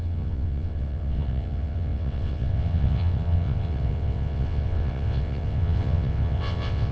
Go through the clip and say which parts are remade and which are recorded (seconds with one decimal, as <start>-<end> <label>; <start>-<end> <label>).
0.0-6.9 remade